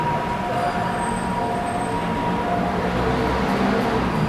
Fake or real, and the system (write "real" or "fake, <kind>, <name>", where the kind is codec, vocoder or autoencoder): real